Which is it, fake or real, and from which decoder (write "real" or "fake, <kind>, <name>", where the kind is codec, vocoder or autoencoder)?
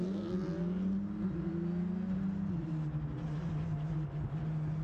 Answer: real